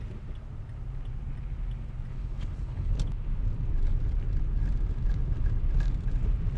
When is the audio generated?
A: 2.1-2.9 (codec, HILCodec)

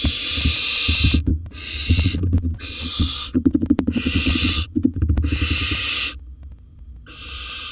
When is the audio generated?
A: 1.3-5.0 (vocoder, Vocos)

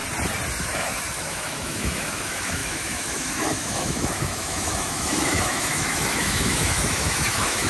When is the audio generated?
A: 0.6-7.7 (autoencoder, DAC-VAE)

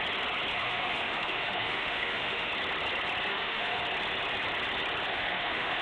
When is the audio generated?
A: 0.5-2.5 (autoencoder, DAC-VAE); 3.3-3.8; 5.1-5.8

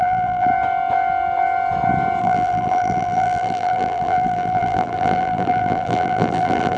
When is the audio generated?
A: 0.0-0.5 (vocoder, BigVGAN v2); 2.2-6.8